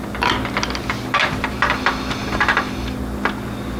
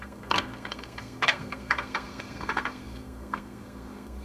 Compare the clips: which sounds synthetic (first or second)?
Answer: second